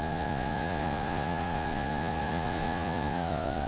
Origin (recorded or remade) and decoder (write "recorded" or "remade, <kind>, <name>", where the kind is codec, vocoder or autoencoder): remade, vocoder, Vocos